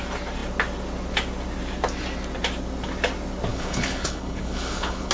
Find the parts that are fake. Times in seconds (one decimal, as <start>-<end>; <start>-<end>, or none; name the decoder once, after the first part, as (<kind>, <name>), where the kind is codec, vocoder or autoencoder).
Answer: 3.5-5.1 (codec, HILCodec)